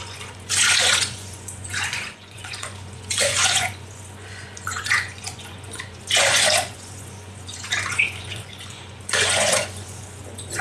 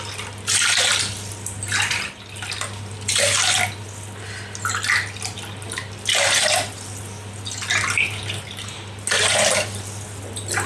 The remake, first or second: first